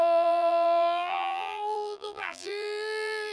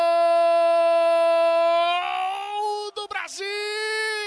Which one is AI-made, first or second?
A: first